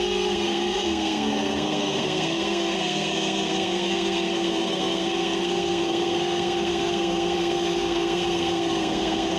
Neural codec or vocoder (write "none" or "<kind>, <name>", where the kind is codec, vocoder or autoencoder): codec, SNAC